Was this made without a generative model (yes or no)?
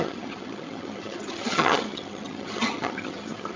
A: no